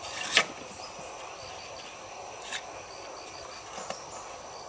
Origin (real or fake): real